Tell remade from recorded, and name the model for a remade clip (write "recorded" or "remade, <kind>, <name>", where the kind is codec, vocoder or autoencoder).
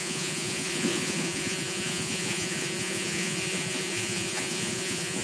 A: remade, vocoder, Vocos